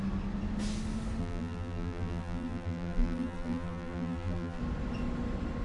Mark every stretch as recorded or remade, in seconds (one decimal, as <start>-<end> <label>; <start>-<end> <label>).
0.0-1.2 recorded; 1.2-4.6 remade; 4.6-5.6 recorded